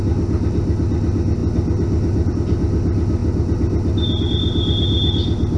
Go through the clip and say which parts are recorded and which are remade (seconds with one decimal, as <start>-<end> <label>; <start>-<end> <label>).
0.0-5.6 recorded